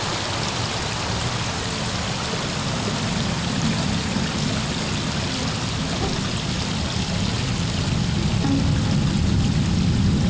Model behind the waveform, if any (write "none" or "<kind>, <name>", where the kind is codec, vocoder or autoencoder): none